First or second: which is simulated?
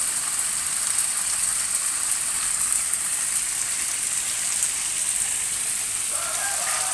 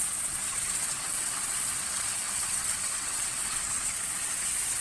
second